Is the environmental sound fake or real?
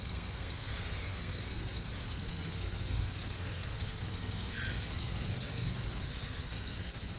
fake